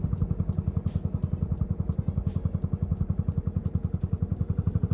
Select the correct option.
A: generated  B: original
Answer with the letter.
B